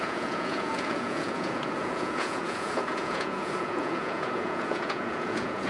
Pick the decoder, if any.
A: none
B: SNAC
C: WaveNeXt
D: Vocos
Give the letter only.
D